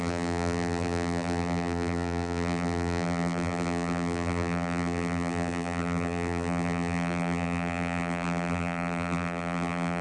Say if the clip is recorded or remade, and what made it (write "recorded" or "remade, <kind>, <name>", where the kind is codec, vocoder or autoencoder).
remade, vocoder, BigVGAN v2